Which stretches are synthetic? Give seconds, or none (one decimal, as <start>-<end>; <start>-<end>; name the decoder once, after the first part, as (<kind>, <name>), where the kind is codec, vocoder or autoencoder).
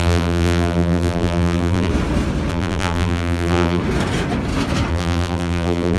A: 0.0-1.9 (vocoder, BigVGAN v2); 2.5-3.8; 4.9-6.0